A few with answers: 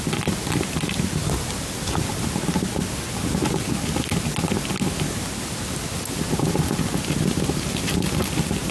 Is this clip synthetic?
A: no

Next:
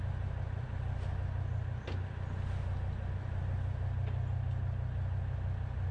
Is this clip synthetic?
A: no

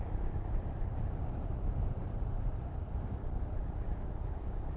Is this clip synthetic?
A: yes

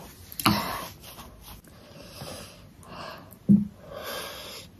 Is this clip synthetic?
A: no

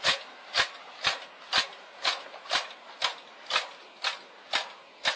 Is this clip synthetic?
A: no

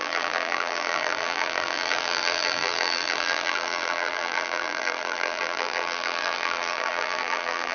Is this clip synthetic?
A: yes